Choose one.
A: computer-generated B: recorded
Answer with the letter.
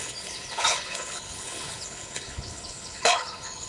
A